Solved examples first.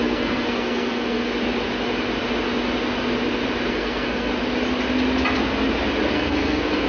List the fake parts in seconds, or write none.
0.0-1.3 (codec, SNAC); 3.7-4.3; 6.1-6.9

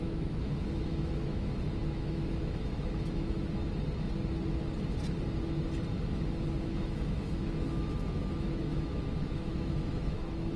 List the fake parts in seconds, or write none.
0.0-3.6 (autoencoder, DAC-VAE); 6.6-10.6

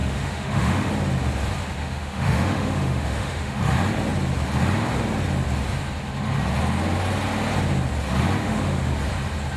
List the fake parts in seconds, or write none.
0.0-0.9 (autoencoder, DAC-VAE); 1.8-3.6; 8.4-8.9

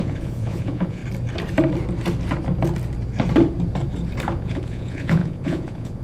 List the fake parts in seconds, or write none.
0.0-1.0 (vocoder, Vocos); 4.4-6.0

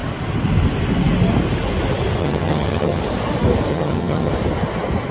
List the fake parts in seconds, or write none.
2.2-3.0 (vocoder, HiFi-GAN); 3.7-4.3

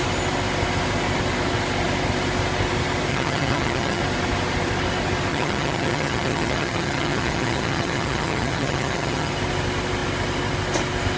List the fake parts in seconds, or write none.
3.1-4.0 (vocoder, HiFi-GAN); 5.3-9.3

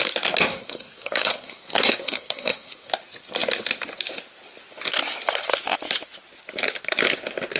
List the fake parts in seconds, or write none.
0.5-2.9 (codec, SNAC)

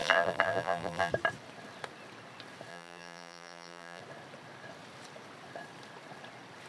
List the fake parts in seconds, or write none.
0.0-1.1 (vocoder, BigVGAN v2); 2.7-4.0